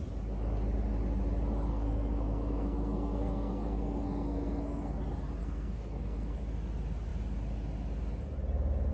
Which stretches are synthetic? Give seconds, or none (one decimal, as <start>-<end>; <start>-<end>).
1.7-5.0; 5.4-6.4